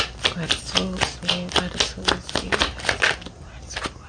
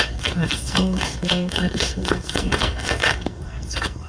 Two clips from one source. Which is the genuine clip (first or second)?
first